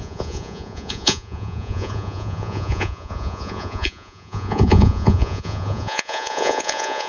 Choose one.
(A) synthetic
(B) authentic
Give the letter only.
A